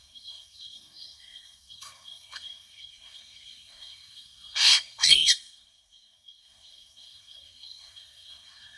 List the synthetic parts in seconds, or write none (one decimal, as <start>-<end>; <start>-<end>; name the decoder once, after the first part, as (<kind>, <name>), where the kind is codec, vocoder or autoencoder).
0.0-8.8 (codec, SNAC)